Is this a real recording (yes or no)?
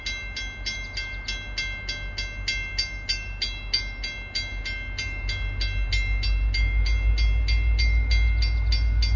yes